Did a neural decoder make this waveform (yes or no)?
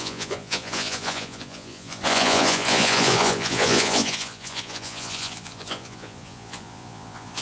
yes